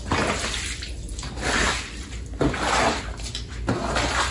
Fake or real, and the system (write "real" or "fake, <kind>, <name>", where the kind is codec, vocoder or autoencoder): real